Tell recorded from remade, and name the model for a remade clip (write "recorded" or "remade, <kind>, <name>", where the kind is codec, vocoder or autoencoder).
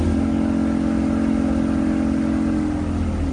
recorded